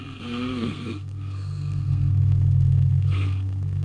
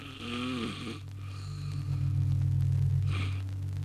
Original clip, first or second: second